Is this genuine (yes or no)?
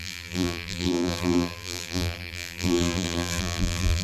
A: no